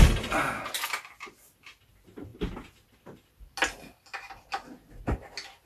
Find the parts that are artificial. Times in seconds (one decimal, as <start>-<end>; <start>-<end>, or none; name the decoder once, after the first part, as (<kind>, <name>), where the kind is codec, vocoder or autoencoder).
none